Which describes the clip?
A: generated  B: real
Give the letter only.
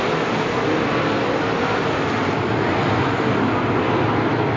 B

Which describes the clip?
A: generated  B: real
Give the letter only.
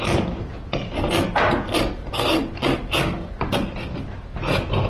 B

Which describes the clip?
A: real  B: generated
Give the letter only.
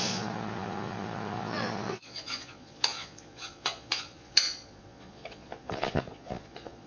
B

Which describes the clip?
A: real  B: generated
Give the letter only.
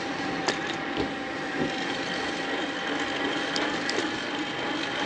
A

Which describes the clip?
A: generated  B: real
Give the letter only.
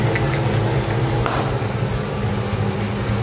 B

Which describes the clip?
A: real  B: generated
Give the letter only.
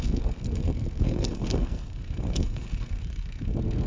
B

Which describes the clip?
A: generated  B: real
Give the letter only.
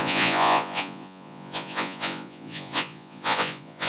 A